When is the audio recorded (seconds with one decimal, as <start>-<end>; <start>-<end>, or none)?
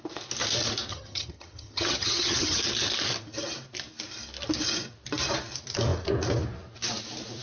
0.0-0.9; 2.6-7.4